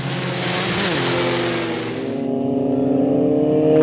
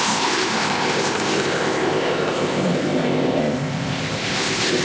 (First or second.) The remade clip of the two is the second